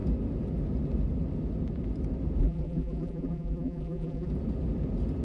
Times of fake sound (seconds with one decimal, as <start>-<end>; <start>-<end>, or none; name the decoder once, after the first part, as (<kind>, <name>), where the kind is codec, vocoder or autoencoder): 2.4-4.3 (vocoder, BigVGAN v2)